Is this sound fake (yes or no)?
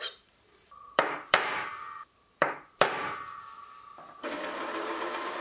yes